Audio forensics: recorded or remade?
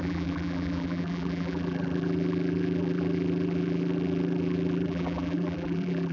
remade